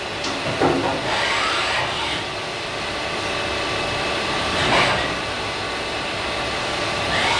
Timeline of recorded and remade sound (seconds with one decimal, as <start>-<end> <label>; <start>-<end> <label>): 0.0-7.4 recorded